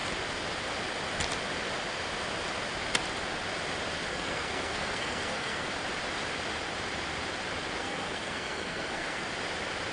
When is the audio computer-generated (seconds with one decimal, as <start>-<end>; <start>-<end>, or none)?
4.1-5.7; 7.8-9.3